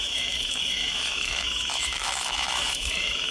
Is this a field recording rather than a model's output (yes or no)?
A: no